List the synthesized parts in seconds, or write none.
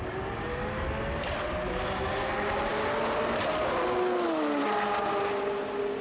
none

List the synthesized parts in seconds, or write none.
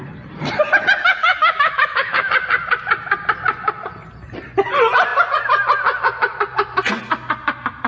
1.2-2.3 (autoencoder, DAC-VAE)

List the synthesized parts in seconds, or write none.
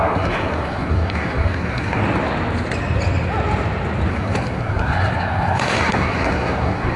0.0-2.0 (codec, SNAC); 4.1-7.0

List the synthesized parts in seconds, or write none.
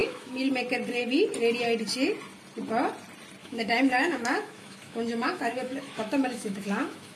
0.0-0.5 (autoencoder, DAC-VAE); 3.4-7.2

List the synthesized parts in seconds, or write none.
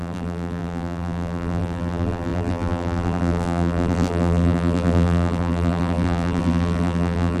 0.0-7.4 (vocoder, BigVGAN v2)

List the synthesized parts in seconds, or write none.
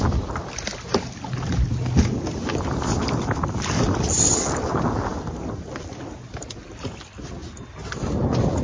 none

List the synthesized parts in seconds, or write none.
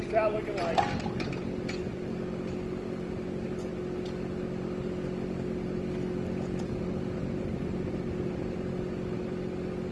none